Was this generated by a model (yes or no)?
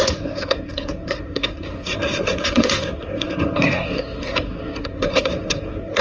yes